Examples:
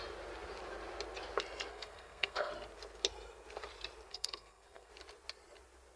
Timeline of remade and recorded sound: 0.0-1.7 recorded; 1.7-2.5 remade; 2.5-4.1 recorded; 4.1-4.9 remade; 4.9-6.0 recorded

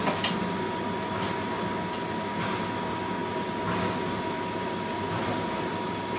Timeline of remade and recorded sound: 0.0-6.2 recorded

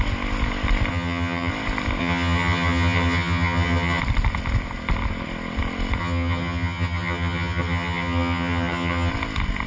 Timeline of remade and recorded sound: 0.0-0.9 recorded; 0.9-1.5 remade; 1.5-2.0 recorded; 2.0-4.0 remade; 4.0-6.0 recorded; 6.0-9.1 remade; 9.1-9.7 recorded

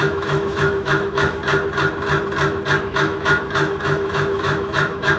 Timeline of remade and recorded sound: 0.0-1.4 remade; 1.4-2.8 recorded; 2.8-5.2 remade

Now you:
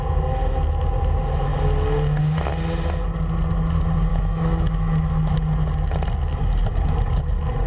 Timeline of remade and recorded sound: 0.0-4.1 recorded; 4.1-5.3 remade; 5.3-7.7 recorded

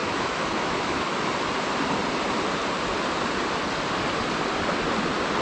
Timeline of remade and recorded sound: 0.0-1.3 remade; 1.3-5.4 recorded